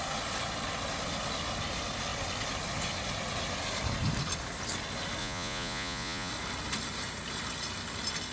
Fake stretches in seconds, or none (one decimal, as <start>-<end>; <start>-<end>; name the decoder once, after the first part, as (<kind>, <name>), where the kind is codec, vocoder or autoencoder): 5.2-6.3 (vocoder, Vocos)